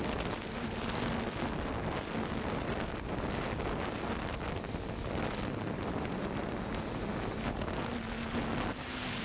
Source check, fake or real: real